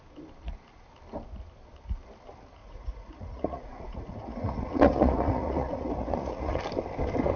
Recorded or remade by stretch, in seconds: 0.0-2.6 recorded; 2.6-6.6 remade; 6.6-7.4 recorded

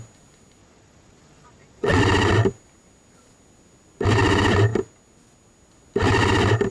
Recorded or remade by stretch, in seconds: 0.0-0.6 recorded; 0.6-2.0 remade; 2.0-6.7 recorded

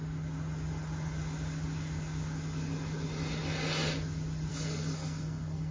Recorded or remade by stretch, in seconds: 0.0-4.5 recorded; 4.5-5.7 remade